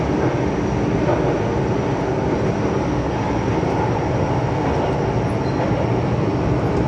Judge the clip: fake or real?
real